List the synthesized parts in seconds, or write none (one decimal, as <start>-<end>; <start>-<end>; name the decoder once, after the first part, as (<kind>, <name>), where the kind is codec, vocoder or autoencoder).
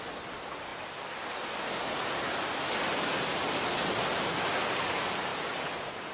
0.7-4.4 (vocoder, BigVGAN v2); 5.3-6.1